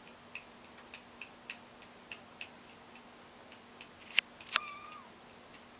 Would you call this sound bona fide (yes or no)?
yes